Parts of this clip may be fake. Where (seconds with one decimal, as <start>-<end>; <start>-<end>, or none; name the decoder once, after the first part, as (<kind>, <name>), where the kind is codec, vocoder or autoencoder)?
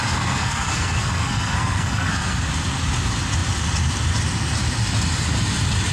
0.0-2.5 (codec, SNAC)